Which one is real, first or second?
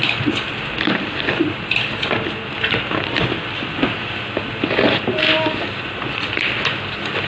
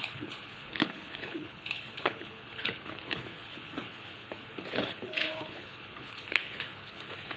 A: first